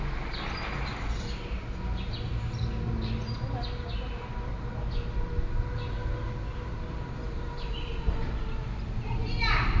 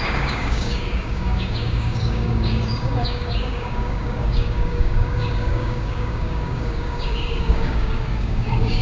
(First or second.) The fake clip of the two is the second